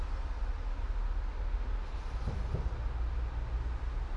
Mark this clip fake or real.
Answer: real